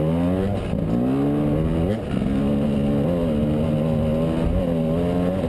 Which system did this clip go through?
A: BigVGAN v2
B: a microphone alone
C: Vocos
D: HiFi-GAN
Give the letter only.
B